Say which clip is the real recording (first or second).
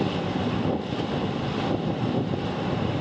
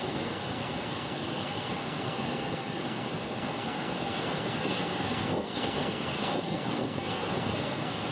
first